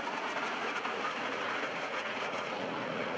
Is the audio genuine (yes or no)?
no